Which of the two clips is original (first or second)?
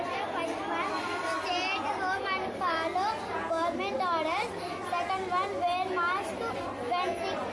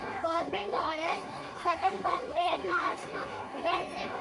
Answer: first